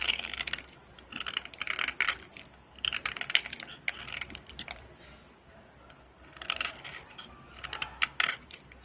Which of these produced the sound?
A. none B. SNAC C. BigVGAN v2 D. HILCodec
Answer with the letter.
C